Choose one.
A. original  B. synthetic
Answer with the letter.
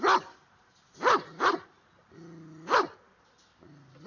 A